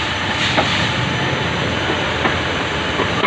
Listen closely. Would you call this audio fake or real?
real